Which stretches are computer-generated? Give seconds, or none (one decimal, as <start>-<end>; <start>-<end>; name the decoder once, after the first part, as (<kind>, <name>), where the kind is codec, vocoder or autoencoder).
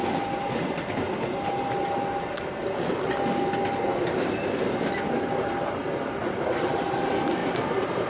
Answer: 3.9-4.5 (vocoder, BigVGAN v2); 7.4-8.1